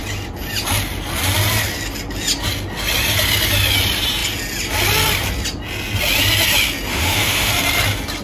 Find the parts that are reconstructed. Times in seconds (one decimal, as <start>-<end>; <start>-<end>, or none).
6.9-7.5